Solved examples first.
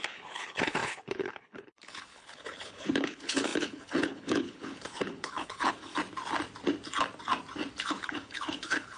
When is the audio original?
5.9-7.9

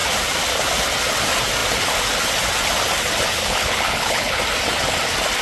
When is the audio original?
0.0-3.4; 4.4-5.4

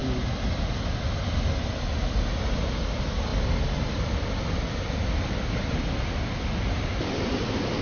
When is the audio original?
0.0-7.8